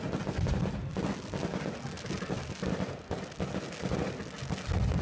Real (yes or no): yes